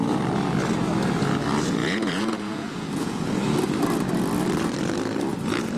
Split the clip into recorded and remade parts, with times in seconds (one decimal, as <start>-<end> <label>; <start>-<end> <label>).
0.0-1.8 recorded; 1.8-3.3 remade; 3.3-5.8 recorded